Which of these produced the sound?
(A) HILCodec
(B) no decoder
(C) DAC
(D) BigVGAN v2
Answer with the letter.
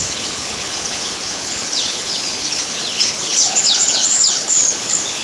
A